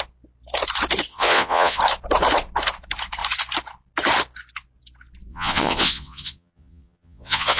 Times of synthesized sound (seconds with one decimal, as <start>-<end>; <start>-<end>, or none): 1.1-1.8; 5.3-7.6